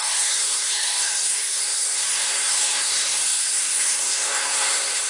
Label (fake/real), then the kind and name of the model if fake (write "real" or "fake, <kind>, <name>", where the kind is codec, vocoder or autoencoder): fake, codec, SNAC